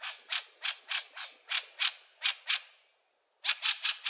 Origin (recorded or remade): recorded